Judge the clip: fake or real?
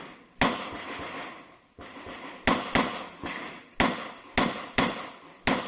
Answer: real